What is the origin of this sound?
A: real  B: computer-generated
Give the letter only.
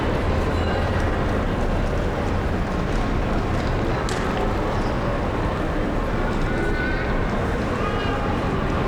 A